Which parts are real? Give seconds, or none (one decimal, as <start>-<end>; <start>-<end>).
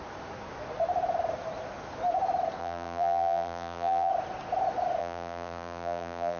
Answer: 0.0-2.6; 4.1-5.0